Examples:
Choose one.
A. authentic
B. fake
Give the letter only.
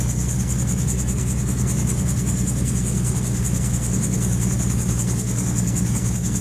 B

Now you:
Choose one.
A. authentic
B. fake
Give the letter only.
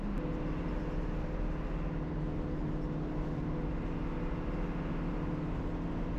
A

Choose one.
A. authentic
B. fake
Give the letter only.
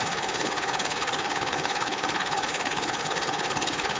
B